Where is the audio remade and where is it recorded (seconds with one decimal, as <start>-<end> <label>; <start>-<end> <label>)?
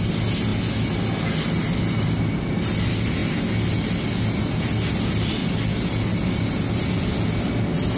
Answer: 0.0-8.0 recorded